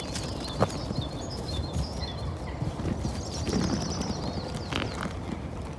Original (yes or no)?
yes